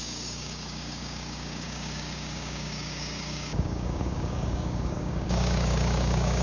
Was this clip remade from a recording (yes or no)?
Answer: yes